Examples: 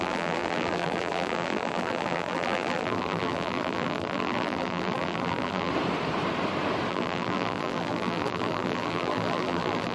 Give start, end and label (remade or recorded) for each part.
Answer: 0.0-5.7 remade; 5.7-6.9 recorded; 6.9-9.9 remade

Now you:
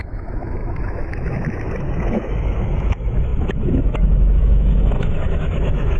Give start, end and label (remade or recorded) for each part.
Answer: 0.0-6.0 remade

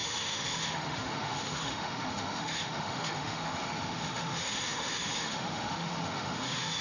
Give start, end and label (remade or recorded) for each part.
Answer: 0.0-6.8 remade

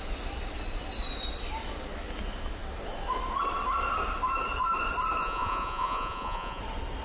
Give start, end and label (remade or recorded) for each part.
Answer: 0.0-5.2 recorded; 5.2-6.6 remade; 6.6-7.0 recorded

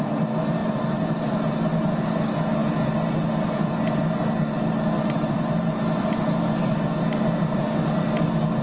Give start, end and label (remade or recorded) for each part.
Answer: 0.0-8.6 recorded